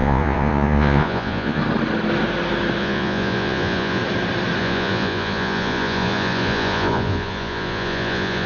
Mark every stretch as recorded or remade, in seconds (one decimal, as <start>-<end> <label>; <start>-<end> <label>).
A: 0.0-1.6 remade; 1.6-2.8 recorded; 2.8-4.0 remade; 4.0-4.6 recorded; 4.6-8.5 remade